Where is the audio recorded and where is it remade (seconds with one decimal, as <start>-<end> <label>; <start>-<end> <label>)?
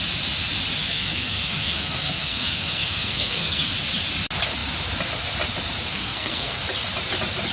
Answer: 0.0-0.8 recorded; 0.8-3.7 remade; 3.7-5.9 recorded; 5.9-6.6 remade; 6.6-7.5 recorded